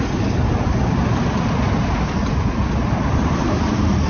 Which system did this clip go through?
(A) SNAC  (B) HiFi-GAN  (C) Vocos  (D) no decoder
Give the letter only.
D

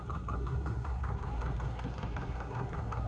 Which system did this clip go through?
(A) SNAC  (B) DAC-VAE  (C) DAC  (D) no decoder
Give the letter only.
A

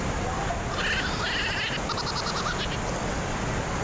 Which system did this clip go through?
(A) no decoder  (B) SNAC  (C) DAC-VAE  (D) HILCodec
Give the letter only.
A